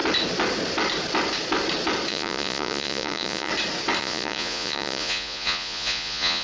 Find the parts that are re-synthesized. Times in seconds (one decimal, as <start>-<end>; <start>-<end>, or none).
2.1-3.5; 4.0-6.4